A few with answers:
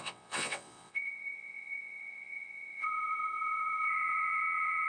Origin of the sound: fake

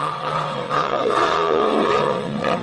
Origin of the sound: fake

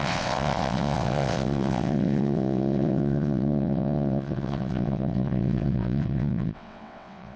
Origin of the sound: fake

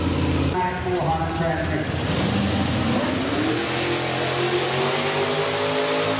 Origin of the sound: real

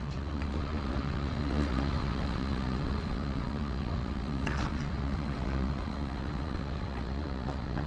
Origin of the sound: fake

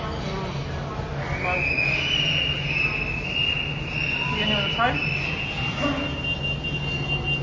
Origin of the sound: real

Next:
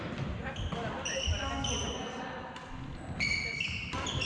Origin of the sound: real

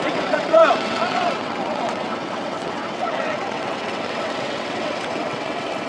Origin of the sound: fake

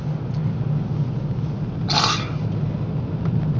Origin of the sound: real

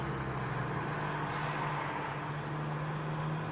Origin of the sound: real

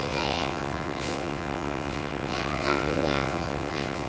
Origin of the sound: fake